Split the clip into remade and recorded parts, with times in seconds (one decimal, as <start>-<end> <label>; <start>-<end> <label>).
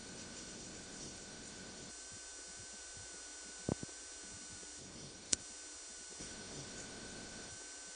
0.0-1.9 remade; 1.9-4.8 recorded; 4.8-5.4 remade; 5.4-6.2 recorded; 6.2-7.5 remade; 7.5-8.0 recorded